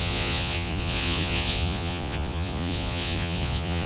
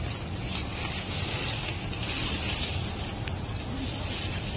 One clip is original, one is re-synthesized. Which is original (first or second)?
second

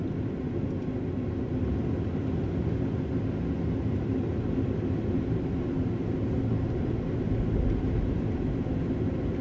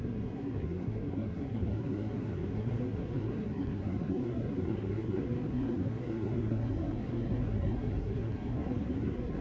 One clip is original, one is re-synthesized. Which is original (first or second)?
first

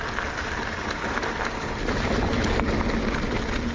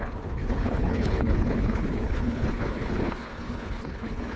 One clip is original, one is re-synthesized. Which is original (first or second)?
first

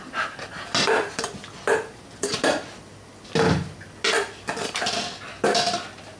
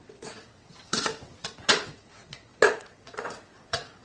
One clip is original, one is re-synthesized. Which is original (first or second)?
first